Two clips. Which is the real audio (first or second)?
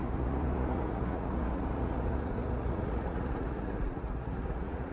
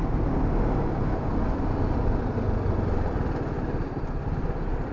second